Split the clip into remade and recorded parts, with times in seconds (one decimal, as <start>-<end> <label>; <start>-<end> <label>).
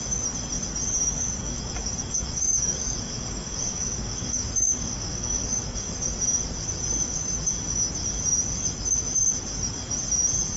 0.0-1.4 recorded; 1.4-5.8 remade; 5.8-10.6 recorded